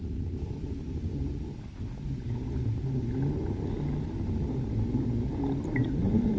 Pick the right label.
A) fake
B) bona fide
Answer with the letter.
B